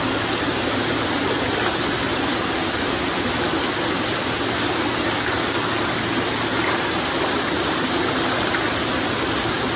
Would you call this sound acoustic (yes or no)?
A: yes